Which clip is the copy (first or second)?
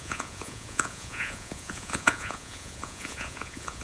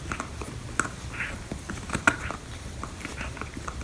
first